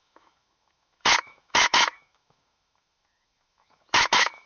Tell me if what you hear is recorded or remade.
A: remade